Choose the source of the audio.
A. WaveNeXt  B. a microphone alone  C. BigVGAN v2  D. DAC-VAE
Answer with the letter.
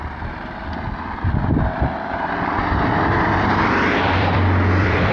C